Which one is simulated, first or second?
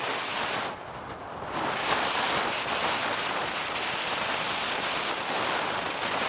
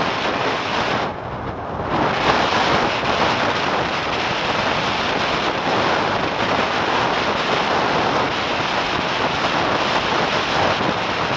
first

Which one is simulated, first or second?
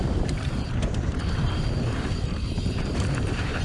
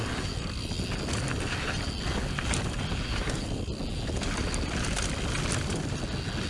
first